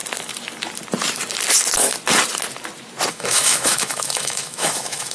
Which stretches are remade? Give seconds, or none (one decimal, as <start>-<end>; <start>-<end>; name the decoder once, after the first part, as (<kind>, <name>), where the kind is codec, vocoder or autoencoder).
3.1-5.1 (autoencoder, DAC-VAE)

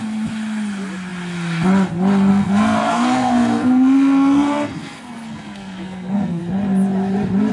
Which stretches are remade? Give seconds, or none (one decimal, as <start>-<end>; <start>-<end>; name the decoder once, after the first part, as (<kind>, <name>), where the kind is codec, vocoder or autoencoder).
2.3-6.4 (codec, SNAC)

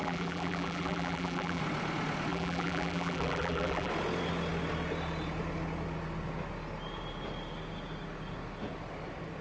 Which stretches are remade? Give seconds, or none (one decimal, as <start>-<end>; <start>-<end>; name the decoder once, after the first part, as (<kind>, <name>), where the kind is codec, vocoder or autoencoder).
0.0-1.6 (vocoder, BigVGAN v2); 2.3-3.9

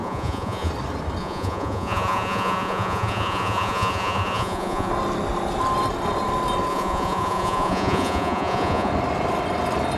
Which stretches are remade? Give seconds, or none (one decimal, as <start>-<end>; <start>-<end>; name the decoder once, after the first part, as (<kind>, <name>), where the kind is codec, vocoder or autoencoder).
0.0-0.7 (vocoder, Vocos); 1.2-4.9; 6.7-8.9

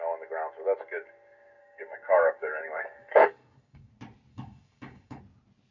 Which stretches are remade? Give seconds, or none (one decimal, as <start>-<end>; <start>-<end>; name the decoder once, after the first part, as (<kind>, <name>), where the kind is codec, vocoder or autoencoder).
1.6-3.9 (codec, DAC); 4.3-5.2

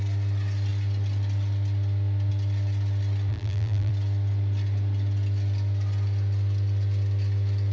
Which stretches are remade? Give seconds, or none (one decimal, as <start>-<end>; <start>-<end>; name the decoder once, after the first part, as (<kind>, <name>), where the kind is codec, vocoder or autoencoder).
3.3-3.9 (vocoder, BigVGAN v2)

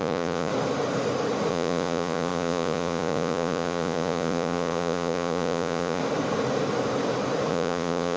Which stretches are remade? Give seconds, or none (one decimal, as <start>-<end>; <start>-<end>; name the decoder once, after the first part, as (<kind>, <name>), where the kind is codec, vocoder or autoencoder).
0.0-0.5 (vocoder, Vocos); 1.5-6.0; 7.5-8.2